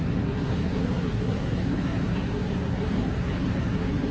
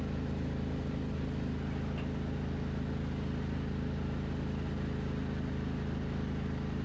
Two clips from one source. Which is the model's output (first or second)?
first